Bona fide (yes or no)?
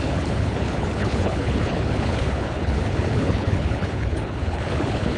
no